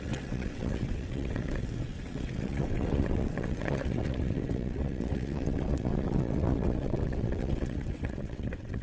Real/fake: fake